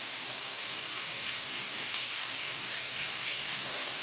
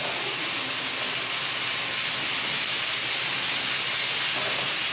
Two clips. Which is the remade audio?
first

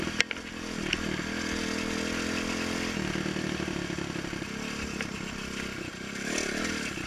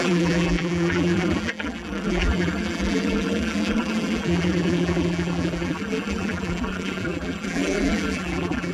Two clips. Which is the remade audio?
second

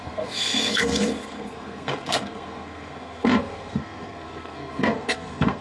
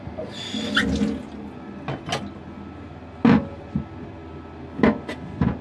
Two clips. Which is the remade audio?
first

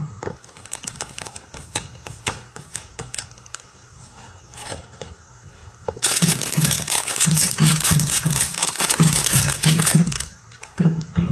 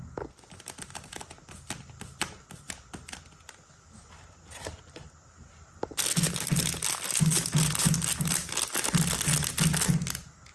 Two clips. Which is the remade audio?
first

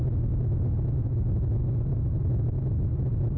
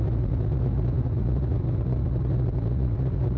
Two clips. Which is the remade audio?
second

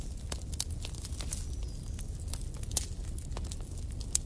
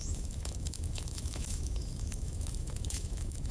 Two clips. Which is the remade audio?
second